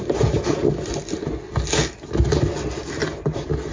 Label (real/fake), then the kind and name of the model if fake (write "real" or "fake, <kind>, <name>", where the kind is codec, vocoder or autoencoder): real